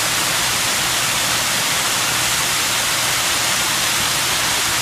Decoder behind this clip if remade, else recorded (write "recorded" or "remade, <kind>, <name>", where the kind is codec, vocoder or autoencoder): recorded